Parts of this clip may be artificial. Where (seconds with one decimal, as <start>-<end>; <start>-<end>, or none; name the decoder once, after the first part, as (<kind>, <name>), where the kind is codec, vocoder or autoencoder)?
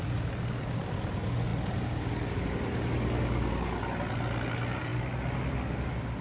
none